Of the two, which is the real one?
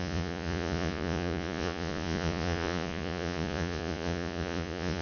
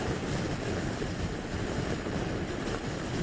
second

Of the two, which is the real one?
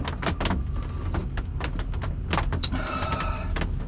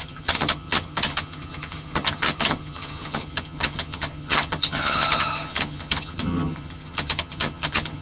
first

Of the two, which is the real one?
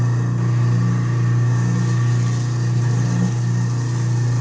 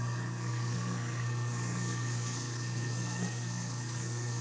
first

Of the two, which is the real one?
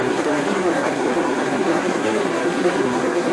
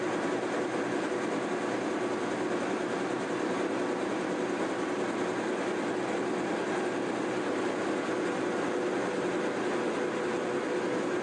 second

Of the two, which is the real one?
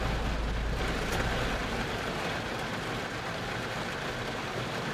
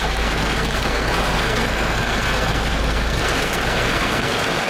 first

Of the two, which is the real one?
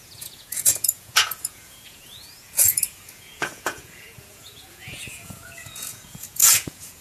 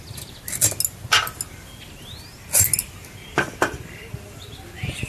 second